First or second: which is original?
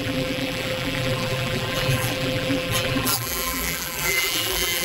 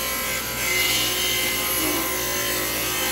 second